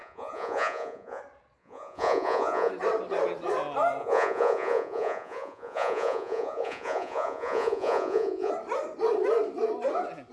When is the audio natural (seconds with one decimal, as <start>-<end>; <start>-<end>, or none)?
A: 1.2-1.6; 2.7-4.0; 8.5-10.3